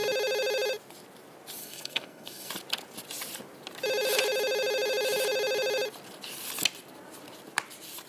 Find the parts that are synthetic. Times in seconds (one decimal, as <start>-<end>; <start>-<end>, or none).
1.6-2.5